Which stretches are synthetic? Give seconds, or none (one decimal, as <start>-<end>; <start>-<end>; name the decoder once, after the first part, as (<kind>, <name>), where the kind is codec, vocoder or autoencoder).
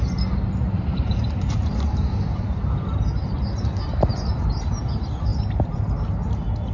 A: 0.9-2.1 (vocoder, BigVGAN v2)